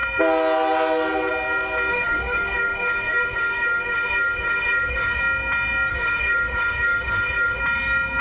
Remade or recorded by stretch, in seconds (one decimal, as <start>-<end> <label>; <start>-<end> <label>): 0.0-1.9 recorded; 1.9-5.2 remade; 5.2-5.9 recorded; 5.9-7.6 remade; 7.6-8.2 recorded